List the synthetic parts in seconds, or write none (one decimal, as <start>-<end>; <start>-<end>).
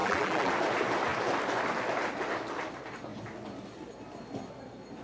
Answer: 0.0-0.5